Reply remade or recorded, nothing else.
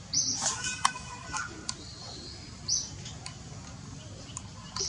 recorded